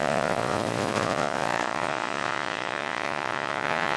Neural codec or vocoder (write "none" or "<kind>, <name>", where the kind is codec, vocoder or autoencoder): vocoder, Vocos